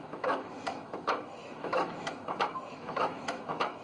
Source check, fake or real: fake